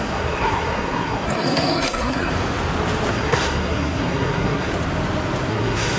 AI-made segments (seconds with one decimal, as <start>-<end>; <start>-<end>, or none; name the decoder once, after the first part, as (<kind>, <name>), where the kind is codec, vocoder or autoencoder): 0.0-2.3 (codec, SNAC); 3.1-4.7; 5.5-6.0